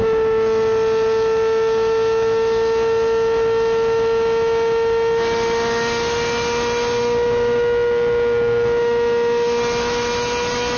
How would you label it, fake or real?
real